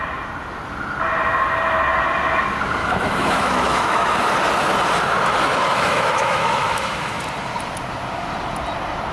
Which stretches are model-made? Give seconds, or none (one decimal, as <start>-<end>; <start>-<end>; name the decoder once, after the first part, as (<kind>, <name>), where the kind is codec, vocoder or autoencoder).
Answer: 2.8-4.1 (autoencoder, DAC-VAE); 5.7-7.1